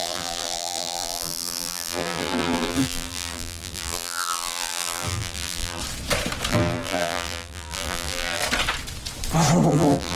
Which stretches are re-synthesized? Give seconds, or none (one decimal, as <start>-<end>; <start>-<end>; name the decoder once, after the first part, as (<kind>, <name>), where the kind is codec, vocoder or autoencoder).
0.0-5.8 (vocoder, BigVGAN v2); 6.5-8.4; 9.7-10.1